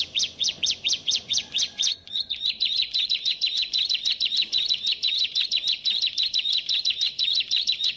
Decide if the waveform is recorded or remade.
remade